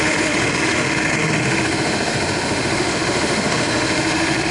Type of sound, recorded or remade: remade